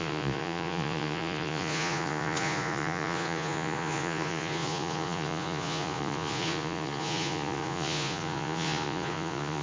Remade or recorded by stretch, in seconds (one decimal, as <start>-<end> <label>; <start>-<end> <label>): 0.0-9.6 remade